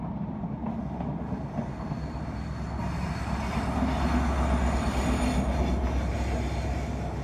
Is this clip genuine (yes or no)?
yes